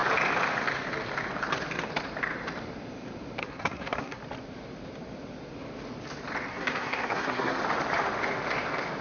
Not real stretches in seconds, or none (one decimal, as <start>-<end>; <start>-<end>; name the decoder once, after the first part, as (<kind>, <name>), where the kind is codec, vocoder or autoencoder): 3.4-4.2 (codec, SNAC); 6.5-7.6